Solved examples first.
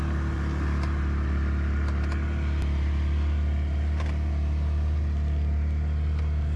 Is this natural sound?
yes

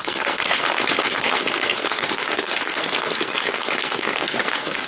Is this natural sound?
no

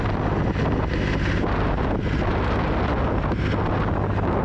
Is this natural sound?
yes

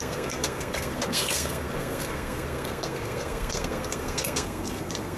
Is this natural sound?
no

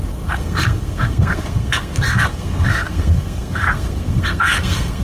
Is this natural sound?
no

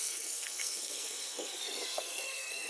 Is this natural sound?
no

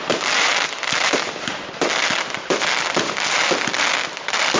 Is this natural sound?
yes